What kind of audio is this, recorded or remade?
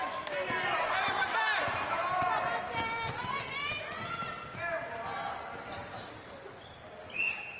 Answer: recorded